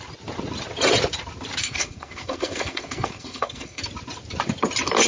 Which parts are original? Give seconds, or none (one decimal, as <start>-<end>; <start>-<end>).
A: 0.0-1.6; 3.8-5.1